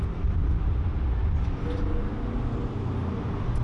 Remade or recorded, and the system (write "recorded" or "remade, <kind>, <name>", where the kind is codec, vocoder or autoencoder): recorded